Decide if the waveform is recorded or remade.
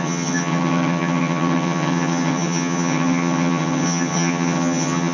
remade